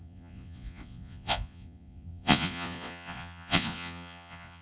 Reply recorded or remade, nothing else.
remade